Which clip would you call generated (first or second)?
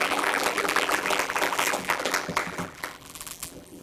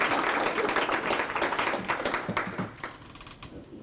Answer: first